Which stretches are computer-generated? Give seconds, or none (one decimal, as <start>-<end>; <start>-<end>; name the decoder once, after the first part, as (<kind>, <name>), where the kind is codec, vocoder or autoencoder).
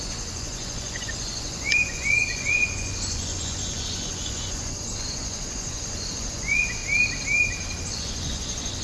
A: 0.0-6.8 (vocoder, Vocos); 7.9-8.8